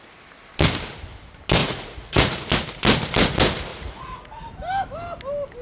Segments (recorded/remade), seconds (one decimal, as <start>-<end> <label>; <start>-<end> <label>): 0.0-1.6 recorded; 1.6-2.5 remade; 2.5-3.7 recorded; 3.7-4.5 remade; 4.5-5.6 recorded